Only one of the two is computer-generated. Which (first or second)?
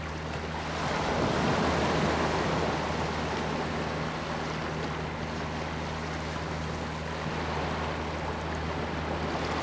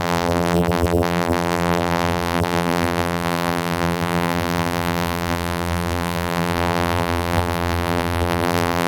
second